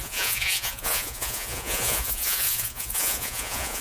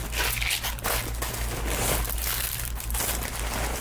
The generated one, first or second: first